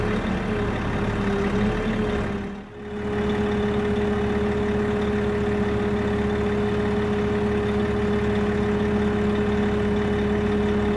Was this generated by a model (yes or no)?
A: no